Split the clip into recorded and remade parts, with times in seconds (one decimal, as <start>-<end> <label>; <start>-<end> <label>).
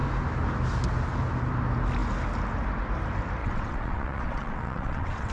0.0-3.4 recorded; 3.4-5.3 remade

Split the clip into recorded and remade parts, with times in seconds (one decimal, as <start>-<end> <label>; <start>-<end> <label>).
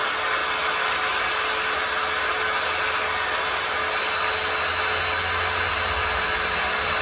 0.0-7.0 recorded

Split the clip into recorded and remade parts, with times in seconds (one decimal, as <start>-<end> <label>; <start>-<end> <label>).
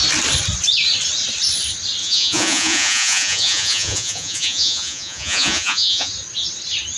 0.0-2.0 recorded; 2.0-6.1 remade; 6.1-7.0 recorded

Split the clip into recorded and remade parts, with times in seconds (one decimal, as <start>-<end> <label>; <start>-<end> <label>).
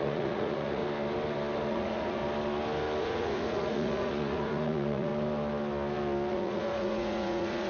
0.0-0.8 remade; 0.8-1.7 recorded; 1.7-2.2 remade; 2.2-3.0 recorded; 3.0-5.1 remade; 5.1-6.3 recorded; 6.3-7.7 remade